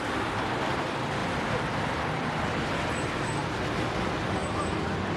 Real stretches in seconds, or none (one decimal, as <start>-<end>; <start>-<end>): 0.0-5.2

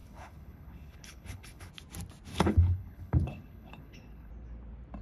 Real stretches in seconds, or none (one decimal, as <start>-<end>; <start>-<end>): 1.7-2.3; 4.3-5.0

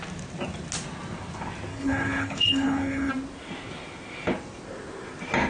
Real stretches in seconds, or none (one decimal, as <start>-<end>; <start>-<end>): 0.0-1.7; 3.1-5.5